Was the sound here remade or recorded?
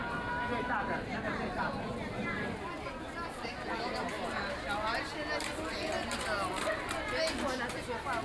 recorded